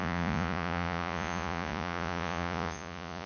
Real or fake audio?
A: fake